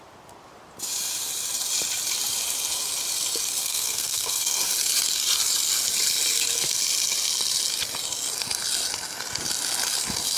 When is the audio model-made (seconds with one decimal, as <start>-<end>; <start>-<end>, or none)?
3.6-4.6